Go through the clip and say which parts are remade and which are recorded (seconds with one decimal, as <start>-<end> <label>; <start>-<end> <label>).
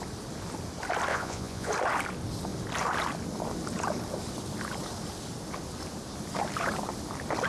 0.0-1.1 recorded; 1.1-1.7 remade; 1.7-7.5 recorded